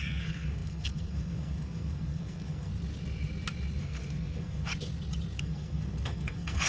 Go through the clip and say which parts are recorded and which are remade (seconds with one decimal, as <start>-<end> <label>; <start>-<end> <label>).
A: 0.0-2.7 remade; 2.7-3.8 recorded; 3.8-4.7 remade; 4.7-5.4 recorded; 5.4-6.7 remade